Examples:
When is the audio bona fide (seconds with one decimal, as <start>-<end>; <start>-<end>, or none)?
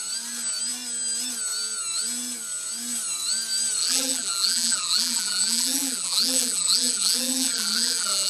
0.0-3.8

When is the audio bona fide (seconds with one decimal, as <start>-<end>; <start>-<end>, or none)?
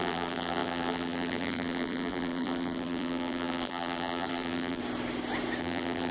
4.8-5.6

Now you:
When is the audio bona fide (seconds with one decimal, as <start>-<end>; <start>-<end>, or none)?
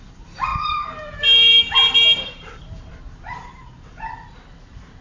none